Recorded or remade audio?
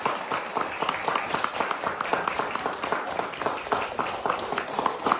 recorded